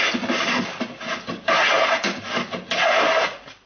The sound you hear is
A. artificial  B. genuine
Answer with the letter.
B